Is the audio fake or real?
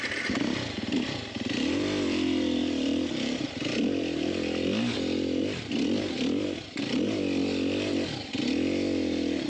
fake